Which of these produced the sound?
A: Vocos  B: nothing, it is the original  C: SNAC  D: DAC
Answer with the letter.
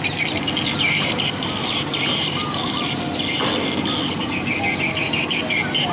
B